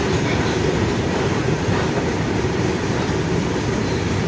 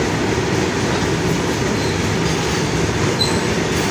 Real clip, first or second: second